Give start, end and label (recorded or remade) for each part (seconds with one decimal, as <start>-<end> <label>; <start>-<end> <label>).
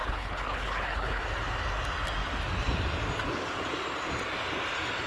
0.0-1.2 remade; 1.2-5.1 recorded